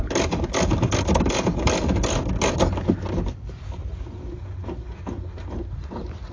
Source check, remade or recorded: recorded